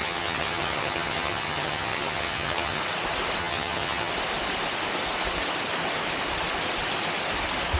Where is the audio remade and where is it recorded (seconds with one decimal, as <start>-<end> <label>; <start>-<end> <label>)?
0.0-2.8 remade; 2.8-3.4 recorded; 3.4-4.1 remade; 4.1-7.8 recorded